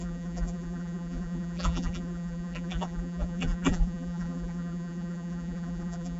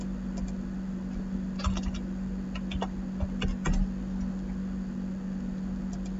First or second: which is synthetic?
first